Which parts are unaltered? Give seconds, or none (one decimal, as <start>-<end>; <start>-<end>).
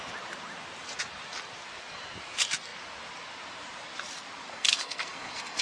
0.0-4.5